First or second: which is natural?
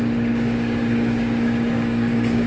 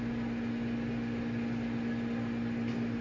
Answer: second